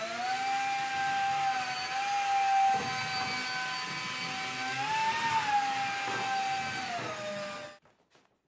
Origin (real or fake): real